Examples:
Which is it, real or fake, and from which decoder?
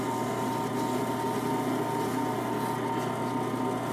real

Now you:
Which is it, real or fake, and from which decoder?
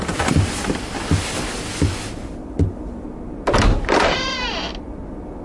real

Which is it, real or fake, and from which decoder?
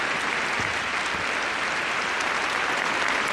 real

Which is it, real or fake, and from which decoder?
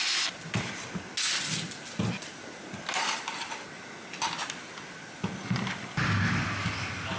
real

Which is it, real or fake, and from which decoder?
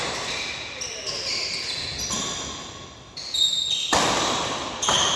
real